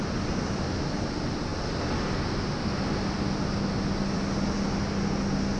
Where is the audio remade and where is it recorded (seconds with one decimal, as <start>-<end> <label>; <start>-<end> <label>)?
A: 0.0-5.6 recorded